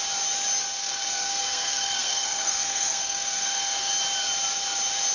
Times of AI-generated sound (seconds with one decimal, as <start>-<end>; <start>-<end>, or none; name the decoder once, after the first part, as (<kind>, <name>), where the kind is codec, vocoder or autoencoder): 0.8-3.9 (codec, SNAC)